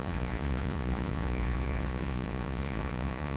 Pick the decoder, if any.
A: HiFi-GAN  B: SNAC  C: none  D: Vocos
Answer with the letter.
D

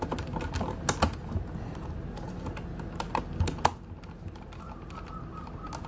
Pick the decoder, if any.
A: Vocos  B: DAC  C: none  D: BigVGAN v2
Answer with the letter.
C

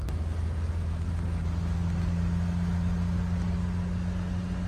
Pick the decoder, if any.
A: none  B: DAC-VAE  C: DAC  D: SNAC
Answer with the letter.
A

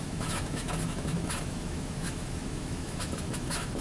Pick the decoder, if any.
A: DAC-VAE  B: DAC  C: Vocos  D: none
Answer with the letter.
A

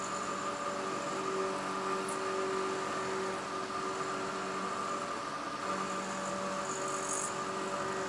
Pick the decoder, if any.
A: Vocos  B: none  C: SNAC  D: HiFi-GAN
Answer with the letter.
B